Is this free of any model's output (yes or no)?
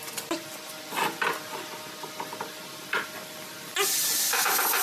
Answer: yes